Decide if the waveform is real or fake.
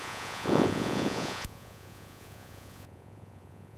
fake